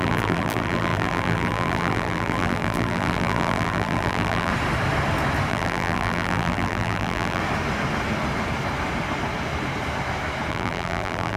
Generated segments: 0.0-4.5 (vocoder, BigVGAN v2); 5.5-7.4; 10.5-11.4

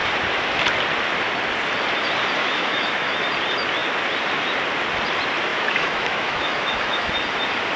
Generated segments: 2.4-3.1 (autoencoder, DAC-VAE); 5.5-7.1

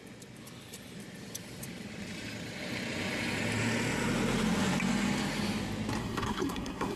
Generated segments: 6.0-7.0 (codec, SNAC)

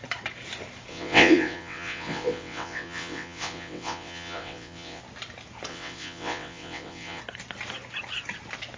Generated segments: 0.9-5.0 (vocoder, WaveNeXt); 5.7-7.2

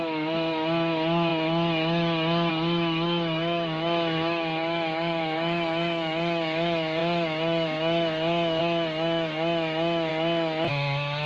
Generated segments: 0.0-10.1 (autoencoder, DAC-VAE); 10.7-11.3